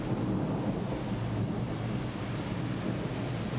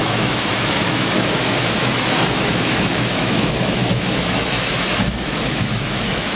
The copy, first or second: second